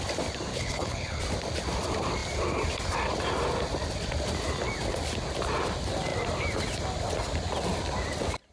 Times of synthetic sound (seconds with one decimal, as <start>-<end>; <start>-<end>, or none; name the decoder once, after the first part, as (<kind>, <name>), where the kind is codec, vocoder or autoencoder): 0.5-1.2 (codec, HILCodec)